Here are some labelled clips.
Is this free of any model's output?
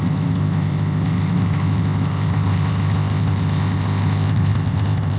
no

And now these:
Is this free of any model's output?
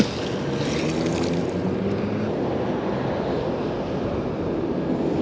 yes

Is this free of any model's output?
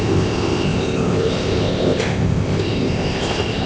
no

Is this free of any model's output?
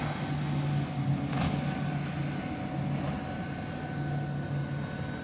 yes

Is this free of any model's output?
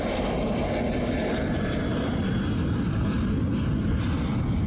yes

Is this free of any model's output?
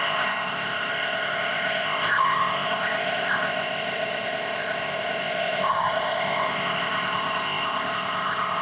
no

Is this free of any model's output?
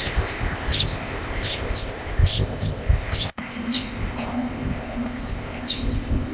no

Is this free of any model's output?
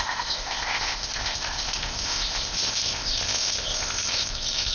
no